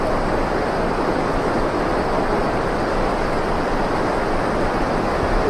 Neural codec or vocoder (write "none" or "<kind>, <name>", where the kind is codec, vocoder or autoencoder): none